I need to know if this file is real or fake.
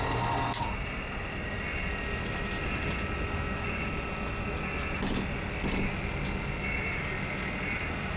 real